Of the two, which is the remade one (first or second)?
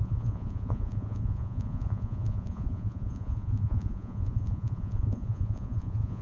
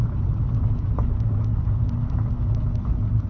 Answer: first